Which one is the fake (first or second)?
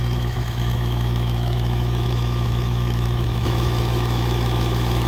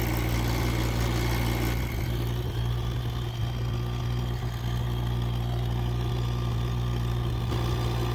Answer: first